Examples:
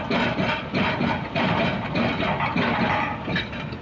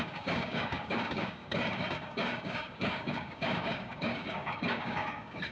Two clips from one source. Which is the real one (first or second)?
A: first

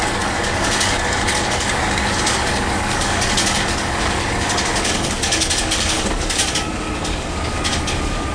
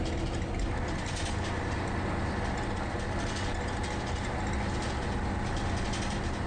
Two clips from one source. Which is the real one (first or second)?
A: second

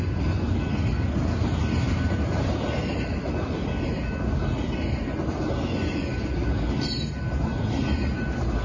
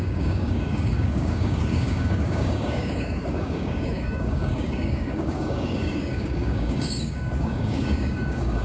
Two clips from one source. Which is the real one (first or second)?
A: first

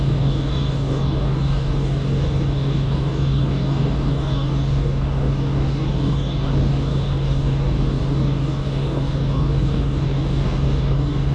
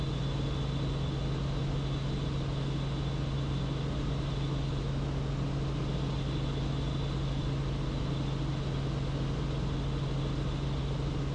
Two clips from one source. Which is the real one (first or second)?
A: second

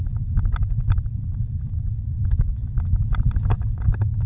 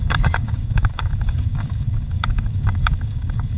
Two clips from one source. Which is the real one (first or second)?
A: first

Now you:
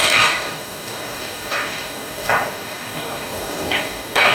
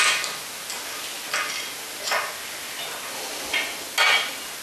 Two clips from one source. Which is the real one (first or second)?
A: second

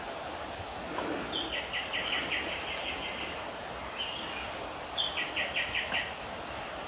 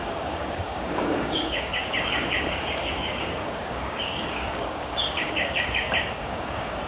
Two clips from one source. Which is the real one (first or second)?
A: first